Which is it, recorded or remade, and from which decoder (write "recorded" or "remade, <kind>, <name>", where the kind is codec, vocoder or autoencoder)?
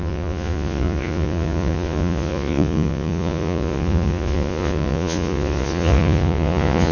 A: remade, vocoder, Vocos